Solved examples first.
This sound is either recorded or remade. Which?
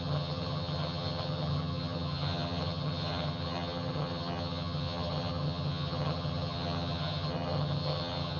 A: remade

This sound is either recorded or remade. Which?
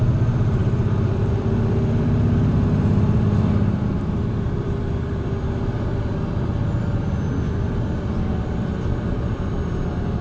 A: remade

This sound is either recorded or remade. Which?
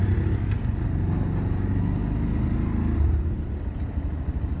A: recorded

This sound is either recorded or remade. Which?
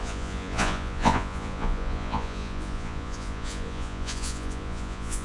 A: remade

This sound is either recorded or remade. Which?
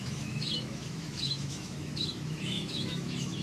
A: remade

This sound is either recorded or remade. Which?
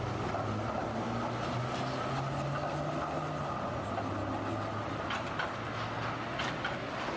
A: recorded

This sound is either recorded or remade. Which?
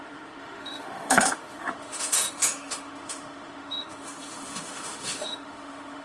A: remade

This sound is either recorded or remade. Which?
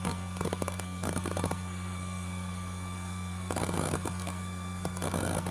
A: remade